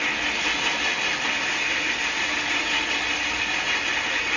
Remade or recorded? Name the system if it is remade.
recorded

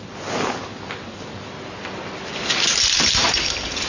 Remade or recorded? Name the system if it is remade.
recorded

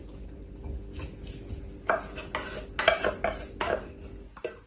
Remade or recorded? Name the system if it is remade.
recorded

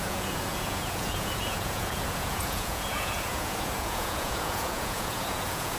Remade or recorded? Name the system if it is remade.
remade, vocoder, Vocos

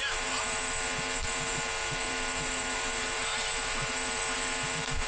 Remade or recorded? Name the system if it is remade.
remade, vocoder, BigVGAN v2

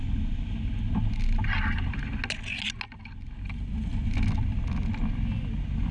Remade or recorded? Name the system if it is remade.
recorded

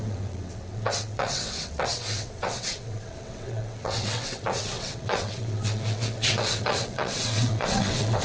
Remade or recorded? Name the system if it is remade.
remade, vocoder, WaveNeXt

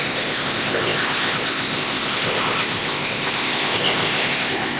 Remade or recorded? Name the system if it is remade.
remade, codec, ZipCodec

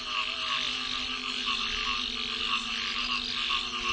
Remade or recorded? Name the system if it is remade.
recorded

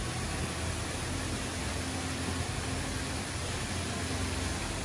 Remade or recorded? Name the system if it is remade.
recorded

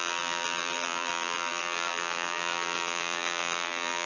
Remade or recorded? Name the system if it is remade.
remade, vocoder, BigVGAN v2